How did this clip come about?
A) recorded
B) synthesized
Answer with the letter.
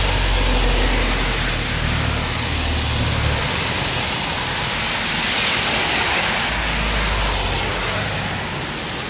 A